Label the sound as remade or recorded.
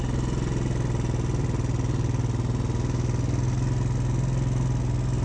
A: recorded